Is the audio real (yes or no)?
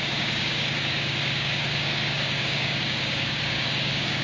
no